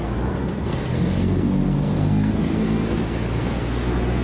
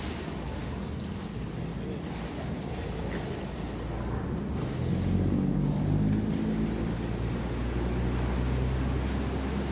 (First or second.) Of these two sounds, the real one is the second